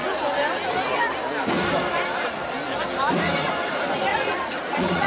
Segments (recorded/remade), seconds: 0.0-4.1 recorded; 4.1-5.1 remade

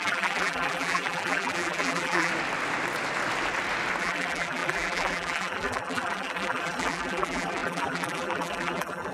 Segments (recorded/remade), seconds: 0.0-2.3 remade; 2.3-4.0 recorded; 4.0-9.1 remade

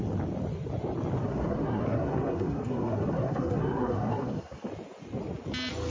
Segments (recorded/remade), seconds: 0.0-1.2 recorded; 1.2-4.7 remade; 4.7-5.9 recorded

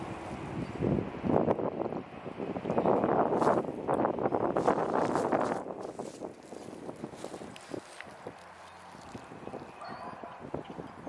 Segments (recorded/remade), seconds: 0.0-11.1 recorded